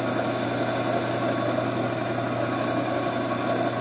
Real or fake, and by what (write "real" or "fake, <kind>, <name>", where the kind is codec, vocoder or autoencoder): real